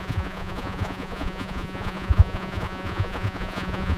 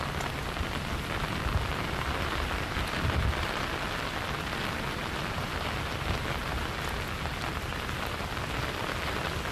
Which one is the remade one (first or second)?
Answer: first